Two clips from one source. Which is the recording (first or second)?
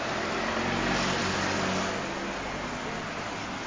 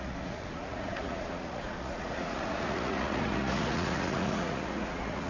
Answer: first